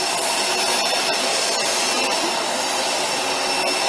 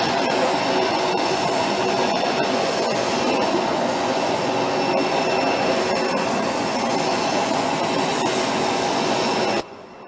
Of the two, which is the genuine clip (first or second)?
first